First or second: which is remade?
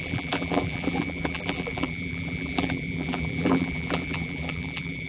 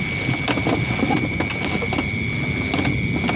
first